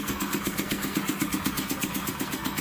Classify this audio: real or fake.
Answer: fake